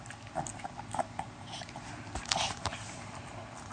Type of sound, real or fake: real